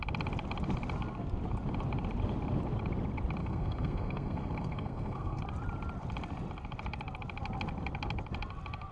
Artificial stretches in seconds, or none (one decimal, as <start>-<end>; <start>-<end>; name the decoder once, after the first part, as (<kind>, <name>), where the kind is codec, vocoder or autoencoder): 3.4-5.4 (codec, SNAC)